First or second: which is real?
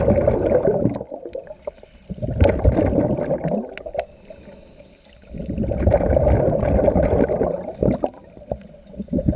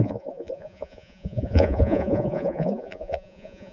first